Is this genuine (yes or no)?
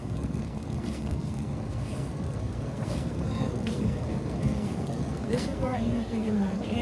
no